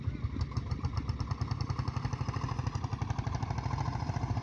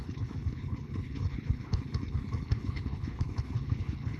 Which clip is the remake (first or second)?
second